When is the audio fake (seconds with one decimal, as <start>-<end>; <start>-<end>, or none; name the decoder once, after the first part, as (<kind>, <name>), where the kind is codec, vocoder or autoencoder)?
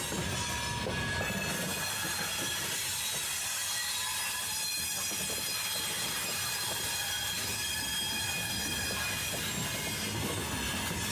none